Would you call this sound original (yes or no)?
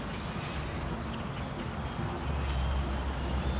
yes